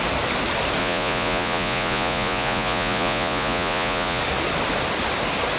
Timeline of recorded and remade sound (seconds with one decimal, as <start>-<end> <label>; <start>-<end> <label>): 0.0-0.8 recorded; 0.8-4.2 remade; 4.2-5.6 recorded